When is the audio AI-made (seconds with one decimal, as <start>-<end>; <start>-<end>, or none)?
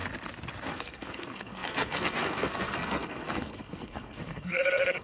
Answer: 0.7-5.0